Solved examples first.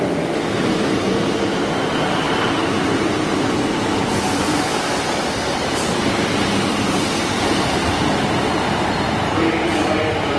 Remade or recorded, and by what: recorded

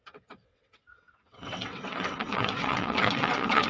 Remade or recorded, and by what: remade, vocoder, WaveNeXt